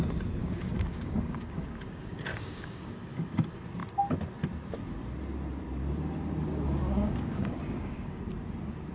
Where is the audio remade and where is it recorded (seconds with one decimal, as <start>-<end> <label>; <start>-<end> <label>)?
0.0-0.4 recorded; 0.4-2.9 remade; 2.9-6.8 recorded; 6.8-8.2 remade; 8.2-8.9 recorded